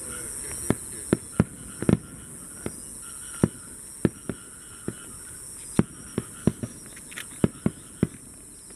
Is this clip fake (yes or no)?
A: no